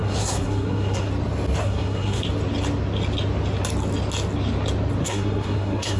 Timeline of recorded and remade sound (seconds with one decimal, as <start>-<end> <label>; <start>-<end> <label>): 0.0-1.1 remade; 1.1-1.6 recorded; 1.6-2.2 remade; 2.2-5.0 recorded; 5.0-6.0 remade